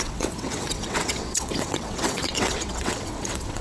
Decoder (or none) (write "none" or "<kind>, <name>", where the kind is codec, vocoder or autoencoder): vocoder, WaveNeXt